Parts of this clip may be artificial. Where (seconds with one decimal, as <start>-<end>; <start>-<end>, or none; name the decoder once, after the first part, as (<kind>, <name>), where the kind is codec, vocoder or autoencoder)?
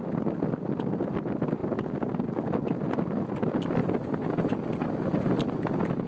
none